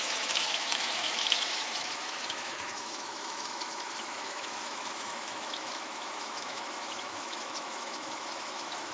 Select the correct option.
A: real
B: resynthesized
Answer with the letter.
B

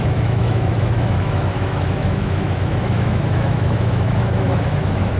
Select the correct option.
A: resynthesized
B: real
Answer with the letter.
A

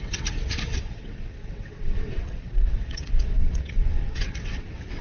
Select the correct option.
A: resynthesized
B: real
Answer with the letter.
A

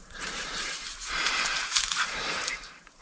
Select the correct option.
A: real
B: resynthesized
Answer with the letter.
B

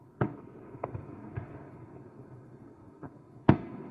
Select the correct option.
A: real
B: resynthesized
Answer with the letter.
B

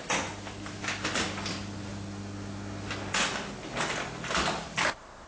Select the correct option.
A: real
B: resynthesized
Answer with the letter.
A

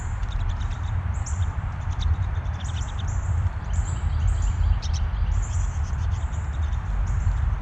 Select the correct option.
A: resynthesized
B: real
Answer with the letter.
B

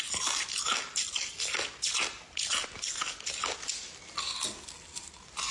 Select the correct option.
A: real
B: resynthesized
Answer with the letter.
A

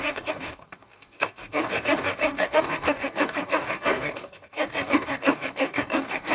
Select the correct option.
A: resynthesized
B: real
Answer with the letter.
A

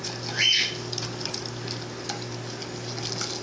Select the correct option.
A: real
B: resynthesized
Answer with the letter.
A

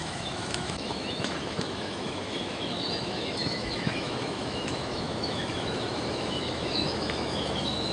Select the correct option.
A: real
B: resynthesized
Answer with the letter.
B